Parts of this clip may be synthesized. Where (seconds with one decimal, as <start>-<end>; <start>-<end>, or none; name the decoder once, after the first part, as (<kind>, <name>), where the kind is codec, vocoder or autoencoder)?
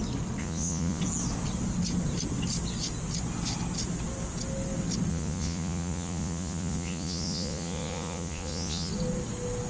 0.4-1.0 (vocoder, Vocos); 5.1-8.9